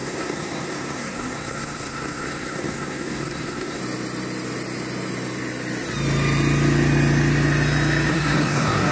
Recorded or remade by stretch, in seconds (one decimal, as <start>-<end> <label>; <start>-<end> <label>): 0.0-3.8 remade; 3.8-8.1 recorded; 8.1-8.9 remade